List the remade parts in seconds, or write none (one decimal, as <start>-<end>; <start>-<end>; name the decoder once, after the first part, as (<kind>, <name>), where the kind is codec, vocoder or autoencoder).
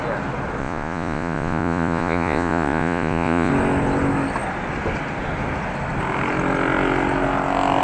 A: 0.6-3.5 (vocoder, Vocos)